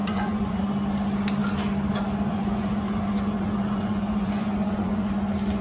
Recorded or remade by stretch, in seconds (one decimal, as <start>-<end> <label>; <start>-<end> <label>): 0.0-0.6 remade; 0.6-2.3 recorded; 2.3-5.1 remade; 5.1-5.6 recorded